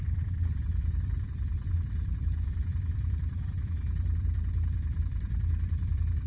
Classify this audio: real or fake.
fake